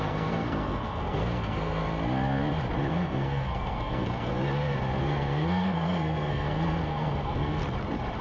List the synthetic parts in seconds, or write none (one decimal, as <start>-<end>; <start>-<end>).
0.0-1.8; 2.9-4.3; 5.0-7.6